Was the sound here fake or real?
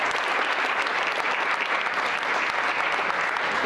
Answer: real